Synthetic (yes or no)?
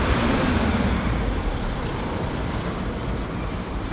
no